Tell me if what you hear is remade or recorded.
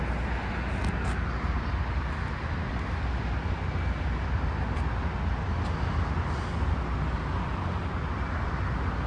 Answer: recorded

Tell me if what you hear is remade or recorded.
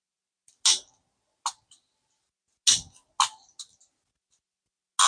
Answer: recorded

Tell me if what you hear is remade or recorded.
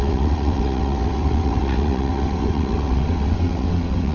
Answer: remade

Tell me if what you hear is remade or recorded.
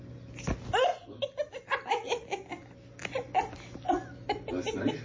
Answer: recorded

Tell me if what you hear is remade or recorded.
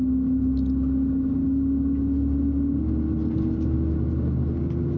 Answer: recorded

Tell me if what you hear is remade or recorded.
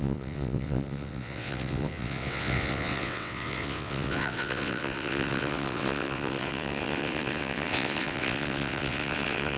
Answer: remade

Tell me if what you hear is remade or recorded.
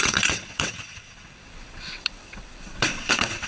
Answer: remade